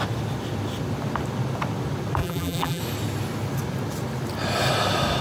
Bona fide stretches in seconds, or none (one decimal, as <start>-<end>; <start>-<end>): 0.0-2.2; 2.8-5.2